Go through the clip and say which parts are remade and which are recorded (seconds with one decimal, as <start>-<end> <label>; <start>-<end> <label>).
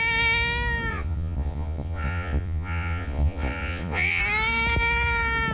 0.0-0.9 recorded; 0.9-4.2 remade; 4.2-5.5 recorded